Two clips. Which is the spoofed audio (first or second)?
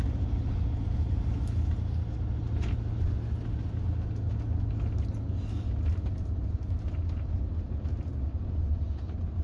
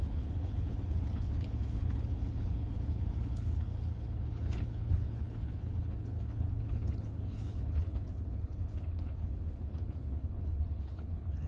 second